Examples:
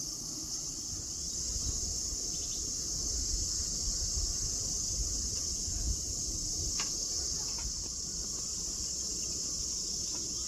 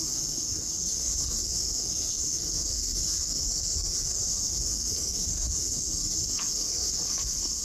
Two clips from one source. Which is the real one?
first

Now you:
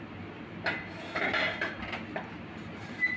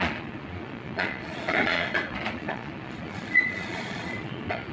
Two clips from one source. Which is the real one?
first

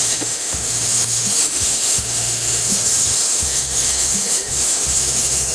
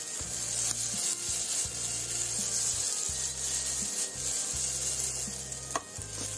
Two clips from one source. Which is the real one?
second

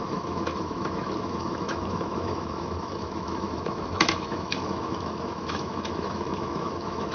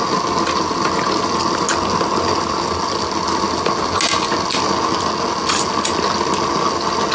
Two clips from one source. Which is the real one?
second